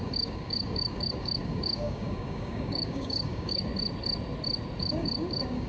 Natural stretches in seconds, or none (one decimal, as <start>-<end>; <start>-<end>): 3.7-4.8